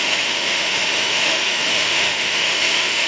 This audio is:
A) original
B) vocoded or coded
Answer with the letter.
B